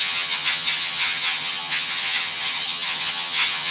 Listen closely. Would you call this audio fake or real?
fake